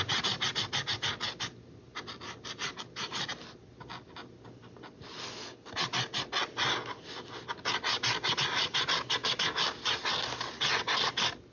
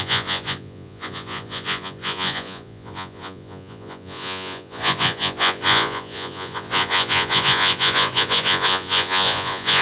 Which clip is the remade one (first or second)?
second